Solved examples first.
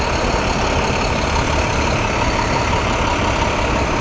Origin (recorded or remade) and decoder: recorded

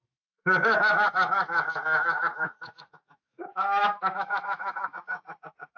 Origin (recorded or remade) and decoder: remade, autoencoder, DAC-VAE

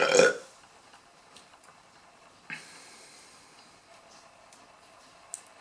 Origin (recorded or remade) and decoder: recorded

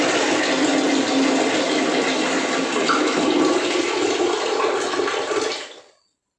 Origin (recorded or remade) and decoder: recorded